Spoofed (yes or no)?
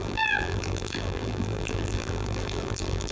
yes